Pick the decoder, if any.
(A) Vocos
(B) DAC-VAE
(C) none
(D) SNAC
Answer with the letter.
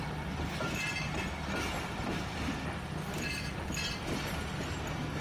C